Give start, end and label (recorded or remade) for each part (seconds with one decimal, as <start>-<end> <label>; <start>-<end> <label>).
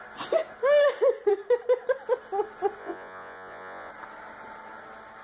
0.0-2.8 recorded; 2.8-3.9 remade; 3.9-5.2 recorded